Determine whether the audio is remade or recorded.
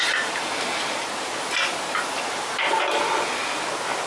recorded